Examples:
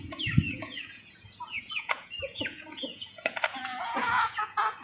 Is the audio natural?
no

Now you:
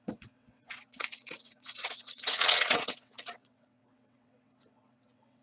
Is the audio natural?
no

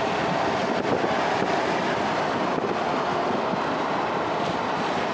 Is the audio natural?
yes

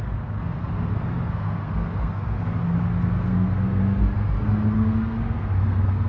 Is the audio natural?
no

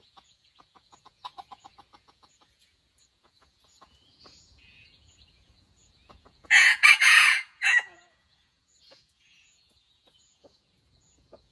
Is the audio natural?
no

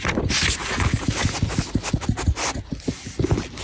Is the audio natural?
yes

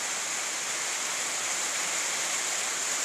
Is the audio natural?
no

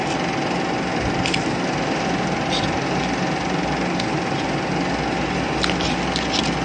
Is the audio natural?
yes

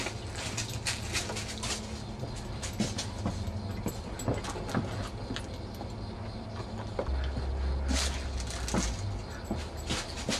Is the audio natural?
yes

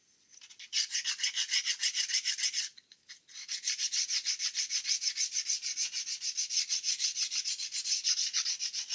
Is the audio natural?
yes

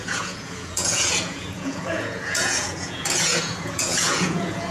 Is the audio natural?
no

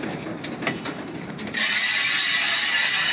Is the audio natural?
no